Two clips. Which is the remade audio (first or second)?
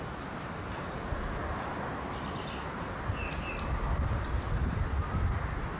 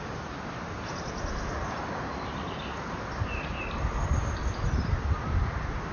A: second